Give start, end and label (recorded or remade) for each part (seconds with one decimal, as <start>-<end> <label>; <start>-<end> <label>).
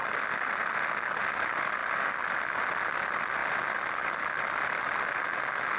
0.0-5.8 recorded